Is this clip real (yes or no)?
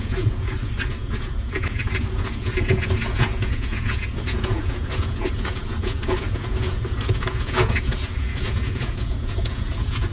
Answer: no